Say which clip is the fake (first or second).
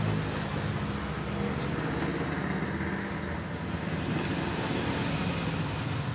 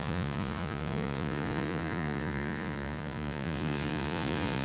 second